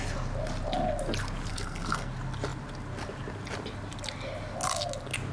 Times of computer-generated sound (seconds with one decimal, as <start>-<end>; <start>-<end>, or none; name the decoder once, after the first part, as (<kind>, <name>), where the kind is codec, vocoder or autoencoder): 1.5-2.1 (codec, SNAC)